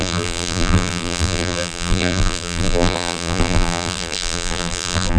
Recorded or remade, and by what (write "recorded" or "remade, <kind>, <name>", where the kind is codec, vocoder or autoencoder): remade, vocoder, BigVGAN v2